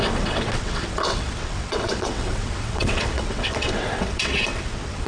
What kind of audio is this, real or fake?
fake